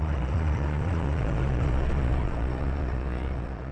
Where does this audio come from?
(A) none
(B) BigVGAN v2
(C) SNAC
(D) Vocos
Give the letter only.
D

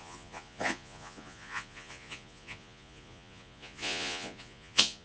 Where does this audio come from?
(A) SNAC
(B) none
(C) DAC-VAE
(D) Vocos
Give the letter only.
D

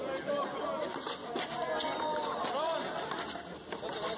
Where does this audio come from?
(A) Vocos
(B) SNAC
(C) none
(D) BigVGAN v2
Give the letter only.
C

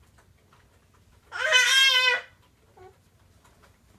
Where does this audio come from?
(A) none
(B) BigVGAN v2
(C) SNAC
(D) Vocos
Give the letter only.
A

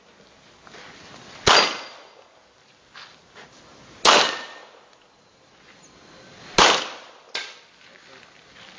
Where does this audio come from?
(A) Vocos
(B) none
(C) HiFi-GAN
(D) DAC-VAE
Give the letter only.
B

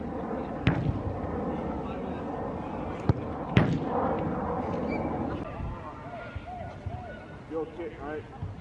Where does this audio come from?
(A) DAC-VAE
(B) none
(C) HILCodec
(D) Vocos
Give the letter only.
B